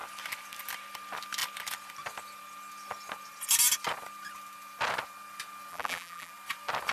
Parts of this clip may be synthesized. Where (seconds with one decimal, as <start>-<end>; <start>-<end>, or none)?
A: 5.7-6.3